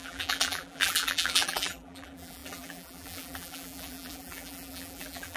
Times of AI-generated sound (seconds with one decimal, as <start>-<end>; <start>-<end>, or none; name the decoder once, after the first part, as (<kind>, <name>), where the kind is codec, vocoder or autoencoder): 0.0-5.4 (vocoder, BigVGAN v2)

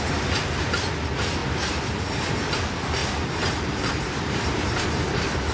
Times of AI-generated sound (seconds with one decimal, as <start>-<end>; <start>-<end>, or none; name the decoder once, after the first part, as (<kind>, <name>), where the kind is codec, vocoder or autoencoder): 3.0-5.1 (vocoder, BigVGAN v2)